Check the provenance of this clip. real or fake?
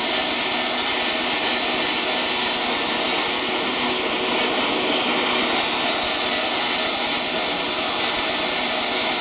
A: real